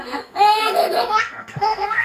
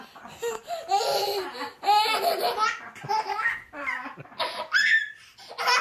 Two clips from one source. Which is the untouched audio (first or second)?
second